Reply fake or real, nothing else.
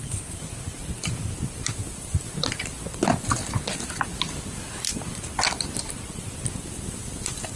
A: real